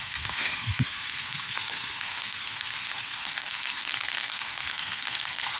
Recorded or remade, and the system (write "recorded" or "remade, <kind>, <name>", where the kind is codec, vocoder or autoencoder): remade, codec, SNAC